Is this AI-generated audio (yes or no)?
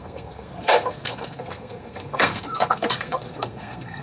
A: yes